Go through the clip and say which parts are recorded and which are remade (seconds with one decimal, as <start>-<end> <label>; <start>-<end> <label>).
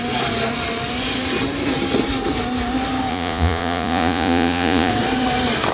0.0-3.1 recorded; 3.1-4.9 remade; 4.9-5.7 recorded